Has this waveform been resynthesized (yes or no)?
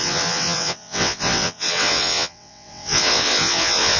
yes